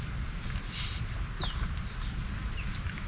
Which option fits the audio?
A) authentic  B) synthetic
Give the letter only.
A